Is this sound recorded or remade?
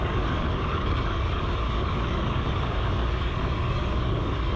remade